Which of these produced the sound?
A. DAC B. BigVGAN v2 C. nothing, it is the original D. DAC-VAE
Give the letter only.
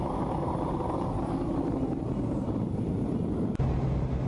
C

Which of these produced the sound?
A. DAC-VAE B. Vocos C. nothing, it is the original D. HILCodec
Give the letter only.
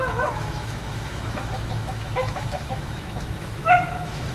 A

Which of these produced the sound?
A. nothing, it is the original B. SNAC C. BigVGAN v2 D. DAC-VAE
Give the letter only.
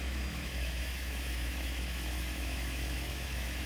D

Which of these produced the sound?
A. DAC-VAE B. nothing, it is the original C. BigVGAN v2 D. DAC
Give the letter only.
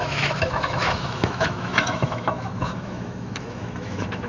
A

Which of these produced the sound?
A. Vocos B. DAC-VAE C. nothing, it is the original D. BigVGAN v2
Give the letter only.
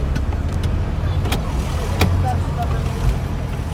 C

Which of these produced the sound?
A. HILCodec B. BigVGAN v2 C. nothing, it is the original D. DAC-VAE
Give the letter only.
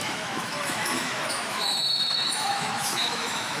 D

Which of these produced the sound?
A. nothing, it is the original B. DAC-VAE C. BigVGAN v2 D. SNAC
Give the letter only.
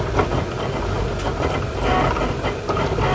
A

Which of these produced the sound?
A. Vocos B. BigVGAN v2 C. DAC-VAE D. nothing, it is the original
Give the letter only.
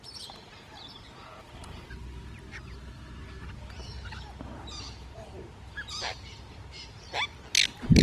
D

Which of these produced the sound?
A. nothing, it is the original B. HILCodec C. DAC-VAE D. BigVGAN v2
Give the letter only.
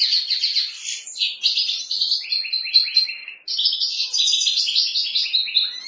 A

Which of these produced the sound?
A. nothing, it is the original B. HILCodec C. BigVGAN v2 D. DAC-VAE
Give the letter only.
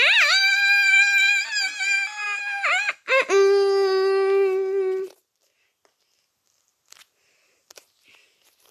A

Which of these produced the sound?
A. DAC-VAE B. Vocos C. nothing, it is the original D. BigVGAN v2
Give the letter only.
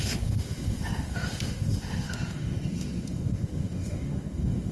A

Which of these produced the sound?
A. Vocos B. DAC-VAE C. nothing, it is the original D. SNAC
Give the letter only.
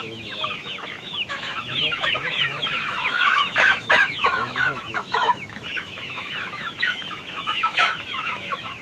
B